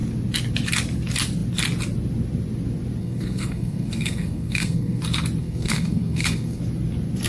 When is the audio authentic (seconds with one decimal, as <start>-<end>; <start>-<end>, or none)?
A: 0.0-3.0; 5.0-5.4; 6.6-7.3